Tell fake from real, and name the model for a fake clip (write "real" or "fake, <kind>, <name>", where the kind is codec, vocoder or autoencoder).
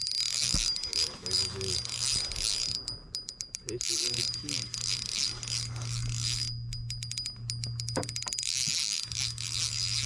real